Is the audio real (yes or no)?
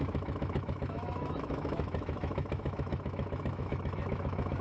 no